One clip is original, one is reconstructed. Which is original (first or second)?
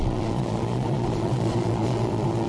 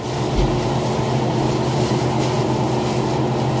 second